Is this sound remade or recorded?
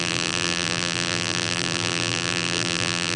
remade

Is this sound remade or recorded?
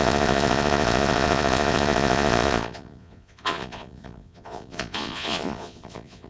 remade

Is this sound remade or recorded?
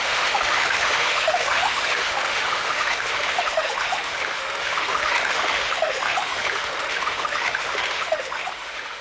remade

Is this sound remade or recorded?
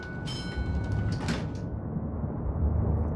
recorded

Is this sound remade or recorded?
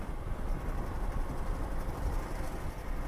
recorded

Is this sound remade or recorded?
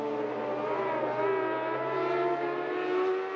recorded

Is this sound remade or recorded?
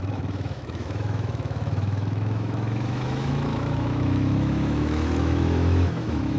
remade